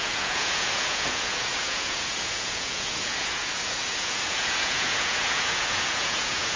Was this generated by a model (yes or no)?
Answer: yes